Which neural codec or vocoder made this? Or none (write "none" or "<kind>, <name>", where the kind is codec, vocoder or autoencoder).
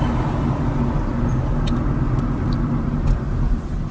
none